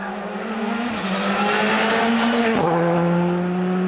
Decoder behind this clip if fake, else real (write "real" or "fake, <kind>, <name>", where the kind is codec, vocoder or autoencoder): real